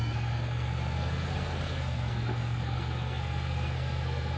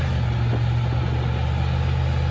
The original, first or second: second